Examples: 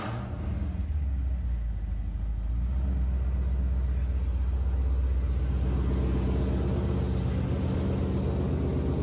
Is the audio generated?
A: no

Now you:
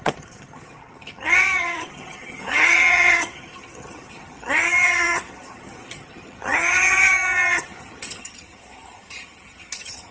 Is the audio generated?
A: yes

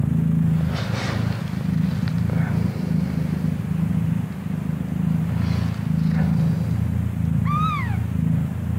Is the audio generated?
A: no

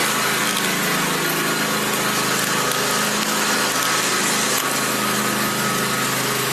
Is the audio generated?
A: no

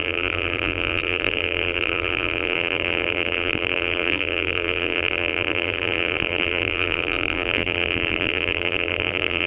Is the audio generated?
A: yes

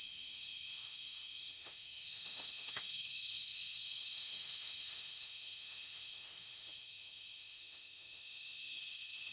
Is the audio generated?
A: yes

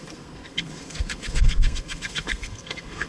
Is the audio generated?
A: yes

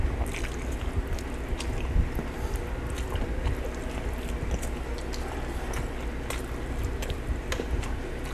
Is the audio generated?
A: no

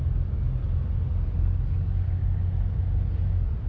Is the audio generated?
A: no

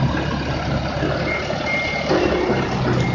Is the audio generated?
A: no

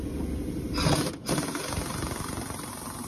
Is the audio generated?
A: yes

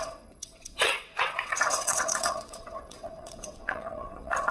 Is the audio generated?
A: yes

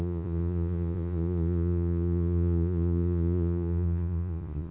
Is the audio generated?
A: yes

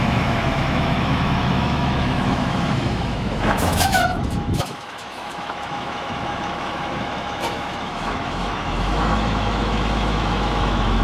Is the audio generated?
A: yes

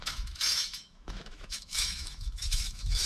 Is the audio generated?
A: yes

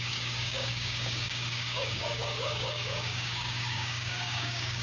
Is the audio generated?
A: yes